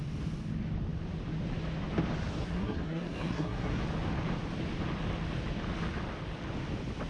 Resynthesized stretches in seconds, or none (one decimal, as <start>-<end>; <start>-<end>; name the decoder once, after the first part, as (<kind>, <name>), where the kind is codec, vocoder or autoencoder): 2.4-3.8 (codec, SNAC)